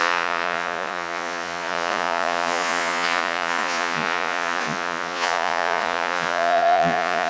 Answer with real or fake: fake